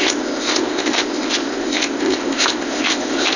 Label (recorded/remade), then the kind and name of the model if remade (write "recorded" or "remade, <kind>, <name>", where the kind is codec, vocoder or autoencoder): remade, codec, ZipCodec